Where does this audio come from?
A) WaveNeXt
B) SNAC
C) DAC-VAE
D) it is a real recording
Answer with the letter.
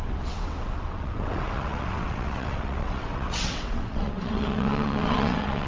A